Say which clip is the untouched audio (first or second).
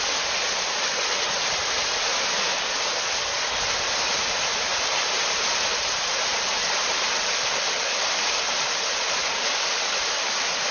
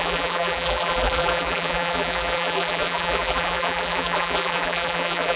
first